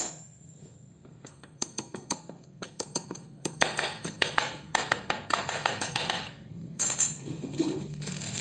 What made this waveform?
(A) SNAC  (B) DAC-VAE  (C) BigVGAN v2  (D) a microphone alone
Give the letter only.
A